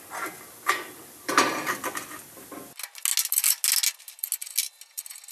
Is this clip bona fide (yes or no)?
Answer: yes